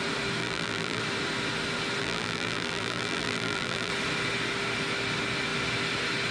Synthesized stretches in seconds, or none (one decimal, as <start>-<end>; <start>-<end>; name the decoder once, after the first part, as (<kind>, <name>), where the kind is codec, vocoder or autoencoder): 0.4-1.0 (vocoder, BigVGAN v2); 2.0-3.9